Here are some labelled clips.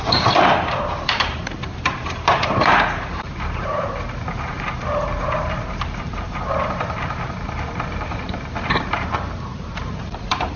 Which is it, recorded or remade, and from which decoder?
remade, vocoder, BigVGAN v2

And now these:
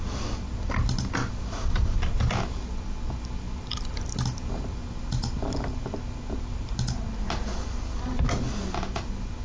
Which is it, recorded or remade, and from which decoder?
recorded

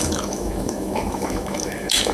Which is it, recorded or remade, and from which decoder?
remade, autoencoder, DAC-VAE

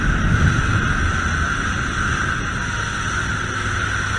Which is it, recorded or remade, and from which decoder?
recorded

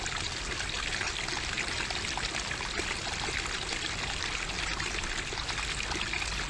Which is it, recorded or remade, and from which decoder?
recorded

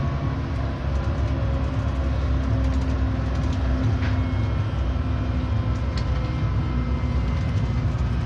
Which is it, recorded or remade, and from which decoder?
recorded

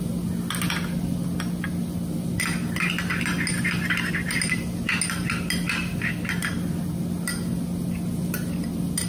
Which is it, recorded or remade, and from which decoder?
recorded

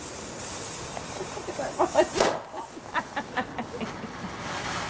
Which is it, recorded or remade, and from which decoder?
recorded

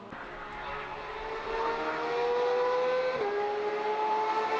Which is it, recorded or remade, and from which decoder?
recorded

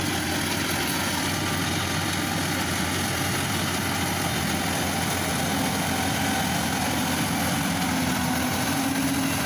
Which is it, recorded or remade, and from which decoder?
recorded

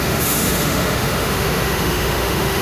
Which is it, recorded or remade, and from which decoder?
remade, autoencoder, DAC-VAE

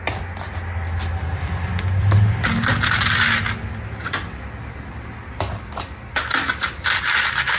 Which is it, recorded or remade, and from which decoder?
recorded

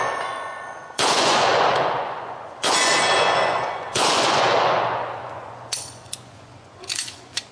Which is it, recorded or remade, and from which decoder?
remade, vocoder, Vocos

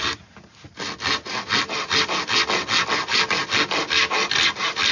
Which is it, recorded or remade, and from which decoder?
recorded